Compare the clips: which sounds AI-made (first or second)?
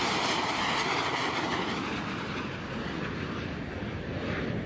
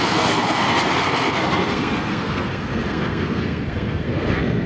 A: second